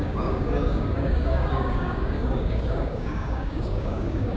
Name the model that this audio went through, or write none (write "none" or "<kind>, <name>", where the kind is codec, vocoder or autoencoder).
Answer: codec, DAC